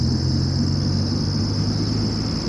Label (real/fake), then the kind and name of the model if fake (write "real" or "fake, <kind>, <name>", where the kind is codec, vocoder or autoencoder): real